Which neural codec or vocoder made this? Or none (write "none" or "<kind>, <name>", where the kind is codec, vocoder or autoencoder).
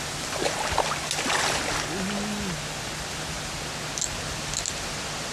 none